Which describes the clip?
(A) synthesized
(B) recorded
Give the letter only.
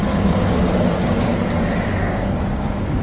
A